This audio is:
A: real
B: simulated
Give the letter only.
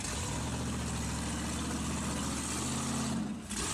A